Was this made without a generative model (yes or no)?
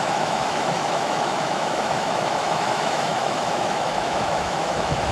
no